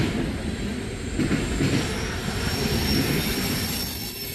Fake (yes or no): no